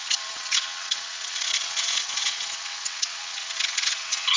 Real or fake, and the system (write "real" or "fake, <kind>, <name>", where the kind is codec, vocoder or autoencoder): fake, vocoder, WaveNeXt